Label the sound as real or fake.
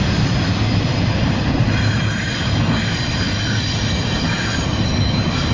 real